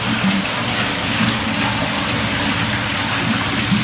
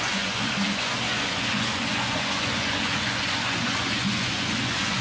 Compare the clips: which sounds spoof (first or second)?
second